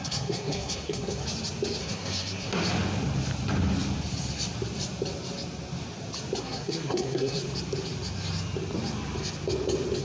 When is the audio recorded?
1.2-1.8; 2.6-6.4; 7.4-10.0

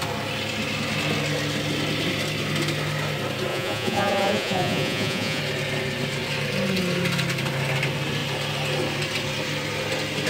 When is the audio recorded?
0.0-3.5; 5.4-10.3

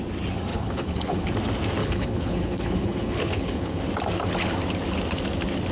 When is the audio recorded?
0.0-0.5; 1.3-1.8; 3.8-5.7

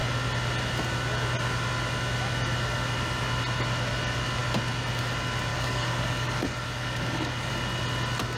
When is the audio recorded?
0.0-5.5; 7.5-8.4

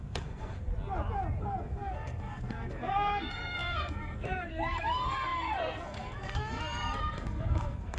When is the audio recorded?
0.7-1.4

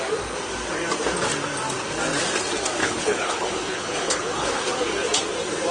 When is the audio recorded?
0.0-2.8; 4.7-5.7